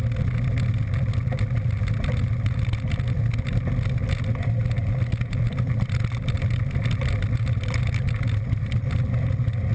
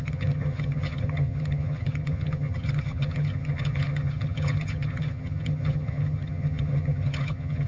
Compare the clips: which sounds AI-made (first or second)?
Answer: second